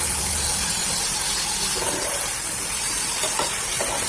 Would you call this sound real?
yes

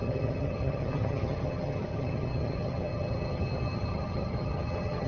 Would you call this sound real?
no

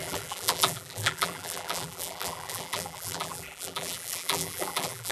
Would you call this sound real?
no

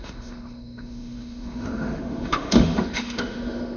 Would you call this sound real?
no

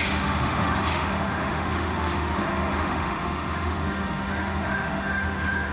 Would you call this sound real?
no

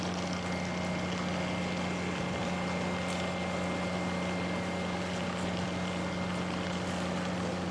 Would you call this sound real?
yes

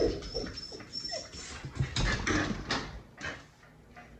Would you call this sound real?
yes